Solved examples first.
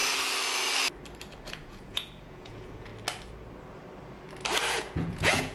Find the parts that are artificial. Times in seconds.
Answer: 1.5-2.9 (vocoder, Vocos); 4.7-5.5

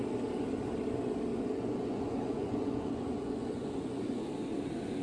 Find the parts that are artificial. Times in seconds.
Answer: 1.3-4.3 (vocoder, Vocos)

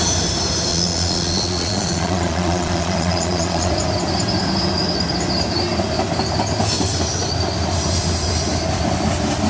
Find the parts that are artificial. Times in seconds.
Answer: 0.7-3.7 (vocoder, Vocos)

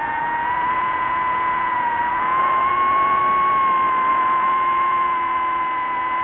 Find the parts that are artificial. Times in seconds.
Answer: 0.0-3.2 (vocoder, Vocos); 4.1-6.2